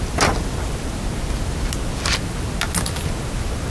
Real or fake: real